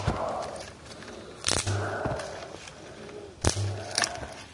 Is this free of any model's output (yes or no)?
yes